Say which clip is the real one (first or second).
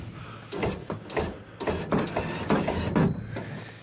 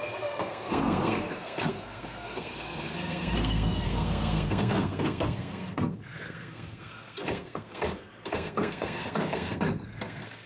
first